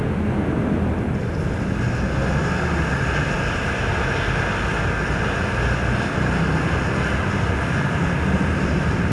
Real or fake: real